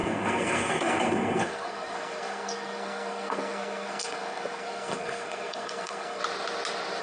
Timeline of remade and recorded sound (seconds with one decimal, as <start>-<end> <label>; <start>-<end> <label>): 0.0-6.2 remade; 6.2-7.0 recorded